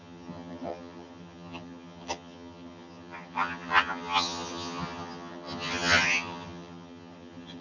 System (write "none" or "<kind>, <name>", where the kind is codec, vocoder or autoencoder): vocoder, HiFi-GAN